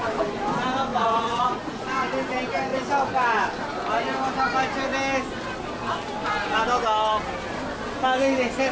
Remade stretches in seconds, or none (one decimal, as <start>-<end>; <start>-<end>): 0.9-2.1